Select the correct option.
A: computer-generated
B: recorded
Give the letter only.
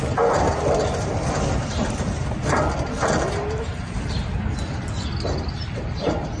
B